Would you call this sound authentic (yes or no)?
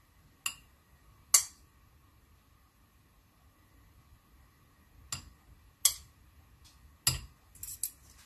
yes